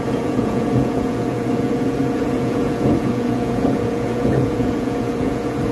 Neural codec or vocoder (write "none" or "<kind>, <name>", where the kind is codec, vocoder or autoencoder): vocoder, Vocos